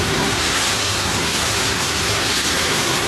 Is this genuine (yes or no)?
no